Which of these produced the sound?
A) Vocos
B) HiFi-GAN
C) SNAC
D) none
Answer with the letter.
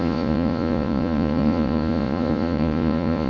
A